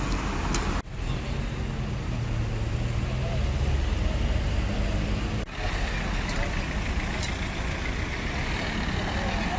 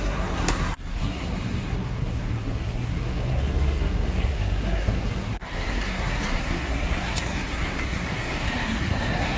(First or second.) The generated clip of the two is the second